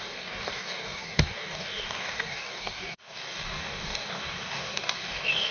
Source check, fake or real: fake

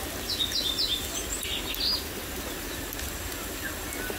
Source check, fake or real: real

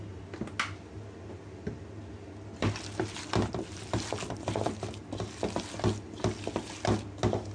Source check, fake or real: real